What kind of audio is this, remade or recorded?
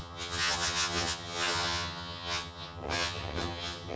remade